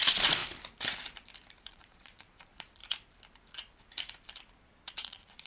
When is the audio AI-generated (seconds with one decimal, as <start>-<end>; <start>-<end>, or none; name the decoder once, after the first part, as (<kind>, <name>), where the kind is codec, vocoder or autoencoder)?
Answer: 0.0-0.4 (vocoder, Vocos); 1.7-2.8; 4.6-5.5